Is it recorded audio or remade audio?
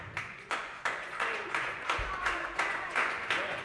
remade